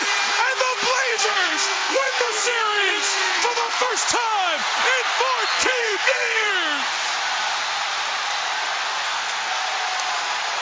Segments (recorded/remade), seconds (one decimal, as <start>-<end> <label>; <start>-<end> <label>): 0.0-1.1 recorded; 1.1-3.9 remade; 3.9-5.5 recorded; 5.5-6.5 remade; 6.5-9.0 recorded; 9.0-9.6 remade; 9.6-10.6 recorded